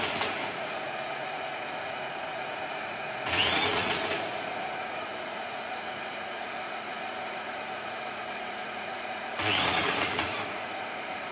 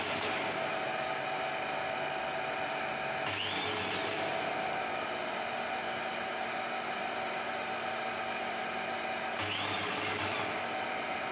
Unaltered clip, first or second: second